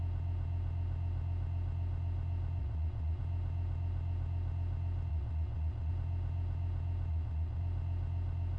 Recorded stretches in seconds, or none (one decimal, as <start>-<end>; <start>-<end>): 0.0-2.6; 3.2-5.1; 5.9-7.1; 7.6-8.6